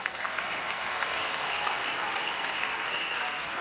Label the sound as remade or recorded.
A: remade